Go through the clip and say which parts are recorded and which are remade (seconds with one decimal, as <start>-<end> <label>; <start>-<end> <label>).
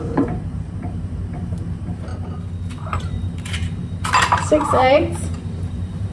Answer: 0.0-2.1 remade; 2.1-2.7 recorded; 2.7-6.1 remade